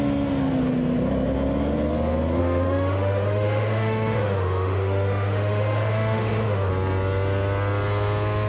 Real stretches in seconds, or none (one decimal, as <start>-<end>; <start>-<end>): 0.0-2.4; 6.7-8.5